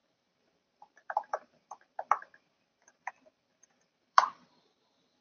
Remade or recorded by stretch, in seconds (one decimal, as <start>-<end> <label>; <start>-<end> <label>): 0.0-3.1 remade; 3.1-3.5 recorded; 3.5-5.2 remade